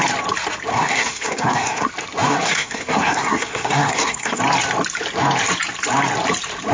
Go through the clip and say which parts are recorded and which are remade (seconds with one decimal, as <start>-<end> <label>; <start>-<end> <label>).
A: 0.0-0.7 recorded; 0.7-1.9 remade; 1.9-2.3 recorded; 2.3-4.4 remade; 4.4-6.7 recorded